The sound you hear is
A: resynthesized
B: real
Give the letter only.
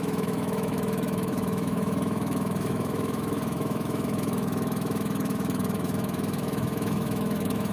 A